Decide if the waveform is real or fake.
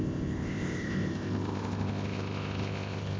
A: fake